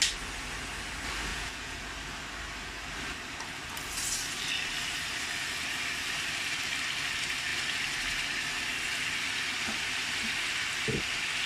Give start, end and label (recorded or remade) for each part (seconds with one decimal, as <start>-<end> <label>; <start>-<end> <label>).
0.0-1.3 recorded; 1.3-1.9 remade; 1.9-11.5 recorded